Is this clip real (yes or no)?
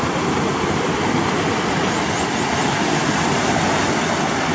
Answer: yes